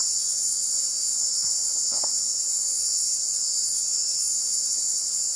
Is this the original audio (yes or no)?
no